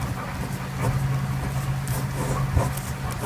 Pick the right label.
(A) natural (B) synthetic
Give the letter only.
A